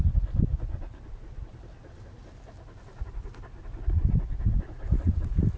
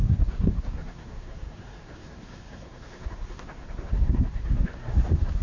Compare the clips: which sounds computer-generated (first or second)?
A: second